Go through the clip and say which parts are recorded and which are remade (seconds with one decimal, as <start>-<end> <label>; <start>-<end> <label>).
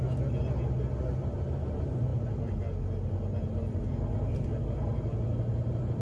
0.0-6.0 recorded